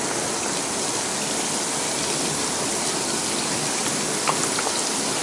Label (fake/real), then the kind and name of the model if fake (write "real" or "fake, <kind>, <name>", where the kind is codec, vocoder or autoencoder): real